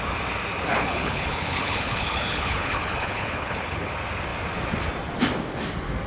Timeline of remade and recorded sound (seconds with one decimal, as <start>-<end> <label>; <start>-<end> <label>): 0.0-0.7 recorded; 0.7-3.9 remade; 3.9-6.1 recorded